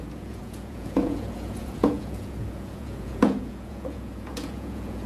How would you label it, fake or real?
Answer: fake